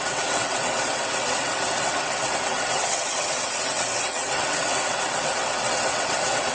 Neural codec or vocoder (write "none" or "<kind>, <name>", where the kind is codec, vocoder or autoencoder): vocoder, WaveNeXt